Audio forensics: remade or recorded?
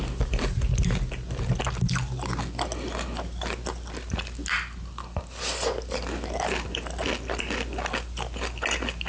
recorded